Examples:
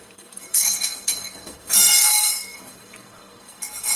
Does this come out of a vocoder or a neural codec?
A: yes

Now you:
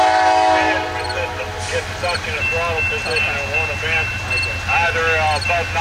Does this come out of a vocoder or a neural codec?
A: no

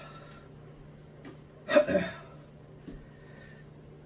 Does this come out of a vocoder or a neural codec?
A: no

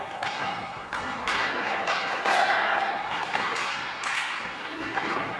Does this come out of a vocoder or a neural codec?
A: yes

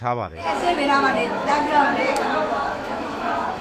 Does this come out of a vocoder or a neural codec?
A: yes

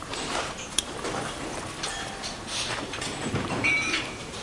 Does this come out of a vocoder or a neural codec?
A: yes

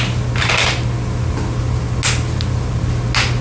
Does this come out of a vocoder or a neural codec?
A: no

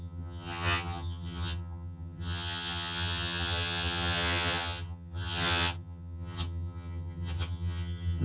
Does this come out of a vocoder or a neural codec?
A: yes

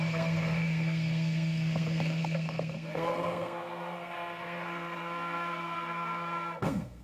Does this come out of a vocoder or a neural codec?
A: yes